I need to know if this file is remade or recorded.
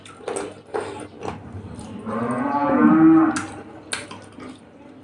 recorded